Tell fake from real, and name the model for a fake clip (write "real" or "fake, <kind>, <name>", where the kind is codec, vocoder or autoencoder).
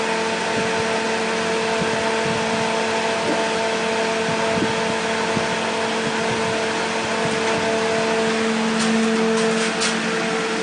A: real